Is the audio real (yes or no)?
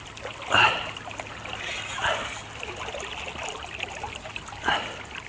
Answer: yes